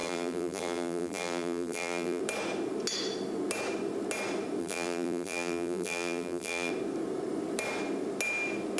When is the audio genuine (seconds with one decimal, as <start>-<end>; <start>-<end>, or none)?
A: 2.2-4.6; 6.7-8.8